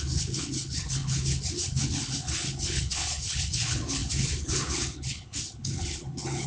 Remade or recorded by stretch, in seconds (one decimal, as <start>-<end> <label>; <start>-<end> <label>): 0.0-6.5 remade